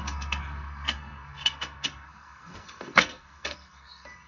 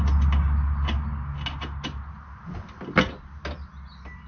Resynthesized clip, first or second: first